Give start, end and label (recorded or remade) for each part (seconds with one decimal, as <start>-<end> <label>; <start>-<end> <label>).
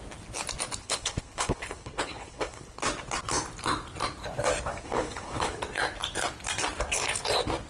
0.0-0.8 recorded; 0.8-2.8 remade; 2.8-4.7 recorded; 4.7-5.6 remade; 5.6-7.7 recorded